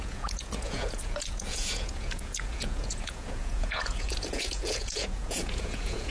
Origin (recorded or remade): remade